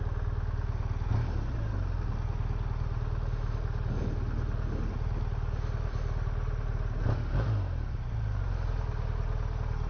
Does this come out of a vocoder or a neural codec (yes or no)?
no